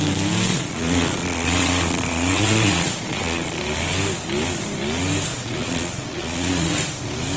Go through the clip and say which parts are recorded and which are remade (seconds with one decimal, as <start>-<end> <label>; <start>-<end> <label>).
0.0-0.5 recorded; 0.5-3.6 remade; 3.6-5.3 recorded; 5.3-6.7 remade; 6.7-7.4 recorded